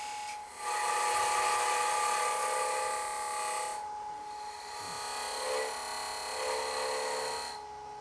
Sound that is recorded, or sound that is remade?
recorded